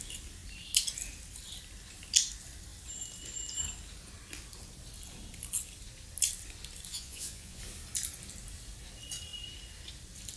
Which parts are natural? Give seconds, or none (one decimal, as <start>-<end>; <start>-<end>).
0.0-6.9; 7.6-10.4